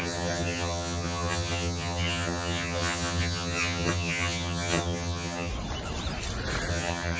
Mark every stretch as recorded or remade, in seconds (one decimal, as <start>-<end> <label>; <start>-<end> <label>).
0.0-5.5 remade; 5.5-6.7 recorded; 6.7-7.2 remade